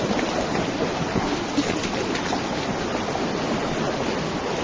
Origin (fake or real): real